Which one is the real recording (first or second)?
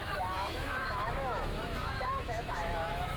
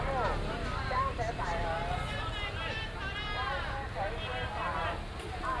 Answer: second